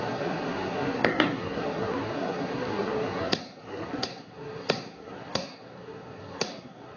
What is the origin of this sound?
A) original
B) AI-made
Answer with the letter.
B